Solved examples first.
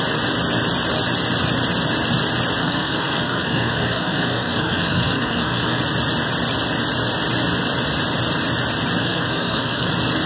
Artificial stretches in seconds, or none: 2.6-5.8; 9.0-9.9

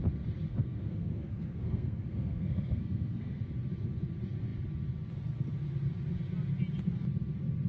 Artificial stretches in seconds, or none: 0.5-3.4

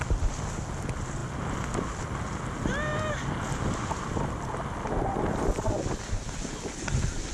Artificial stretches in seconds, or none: none

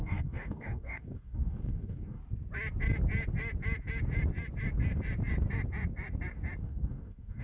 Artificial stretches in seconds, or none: 0.0-2.2; 6.6-7.4

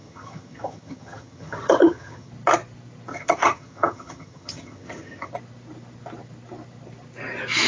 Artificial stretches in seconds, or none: 0.0-2.3; 3.1-5.3